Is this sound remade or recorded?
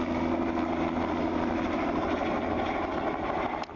recorded